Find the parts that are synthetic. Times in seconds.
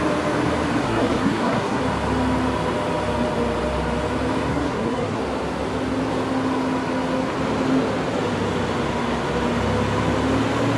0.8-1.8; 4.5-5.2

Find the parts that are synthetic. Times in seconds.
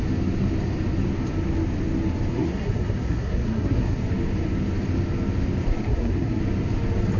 2.3-4.0; 5.7-6.4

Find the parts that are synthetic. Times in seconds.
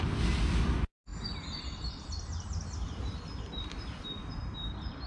none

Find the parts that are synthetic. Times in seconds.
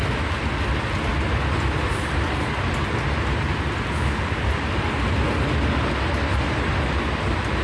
none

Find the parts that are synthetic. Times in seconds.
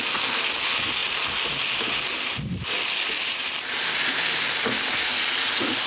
none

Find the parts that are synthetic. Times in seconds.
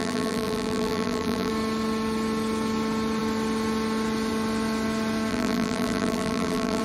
0.0-1.5; 5.3-6.8